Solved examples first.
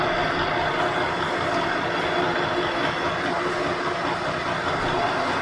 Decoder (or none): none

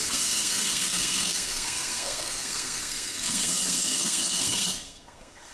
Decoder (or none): codec, SNAC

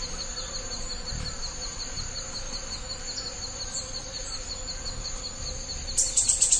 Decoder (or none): none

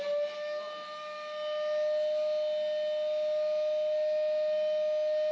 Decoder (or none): none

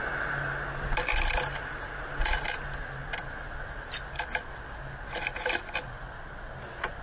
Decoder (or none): none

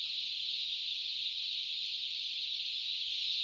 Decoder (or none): none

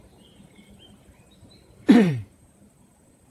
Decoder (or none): vocoder, BigVGAN v2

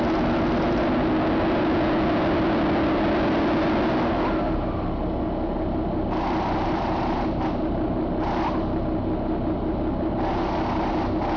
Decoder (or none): none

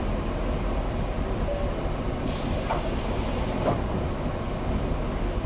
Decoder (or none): none